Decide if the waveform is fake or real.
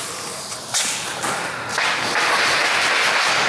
real